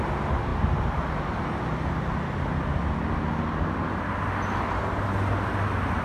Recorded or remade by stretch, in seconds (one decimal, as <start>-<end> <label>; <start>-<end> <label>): 0.0-6.0 recorded